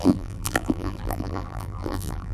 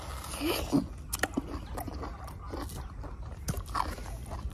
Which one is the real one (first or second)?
second